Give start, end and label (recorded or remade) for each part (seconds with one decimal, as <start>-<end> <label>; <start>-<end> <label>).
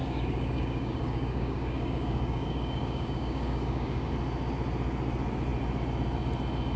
0.0-4.1 remade; 4.1-6.8 recorded